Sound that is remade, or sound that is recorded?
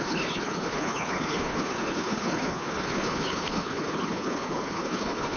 remade